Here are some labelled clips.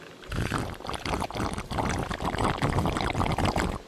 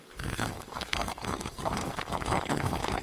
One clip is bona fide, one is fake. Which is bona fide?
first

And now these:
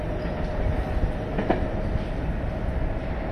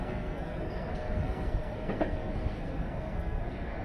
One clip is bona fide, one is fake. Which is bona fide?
first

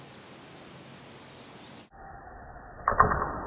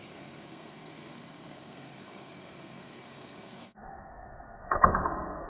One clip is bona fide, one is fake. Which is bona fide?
first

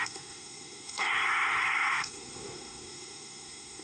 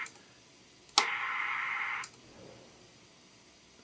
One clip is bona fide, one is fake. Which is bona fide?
second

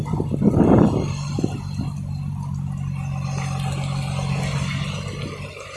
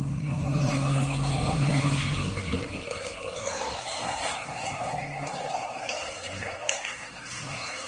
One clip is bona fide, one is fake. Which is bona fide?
first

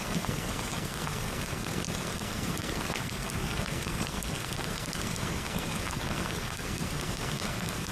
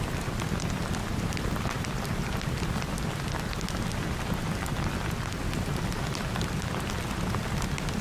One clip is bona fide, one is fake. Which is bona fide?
second